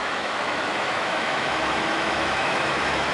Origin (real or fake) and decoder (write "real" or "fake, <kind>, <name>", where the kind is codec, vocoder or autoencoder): fake, autoencoder, DAC-VAE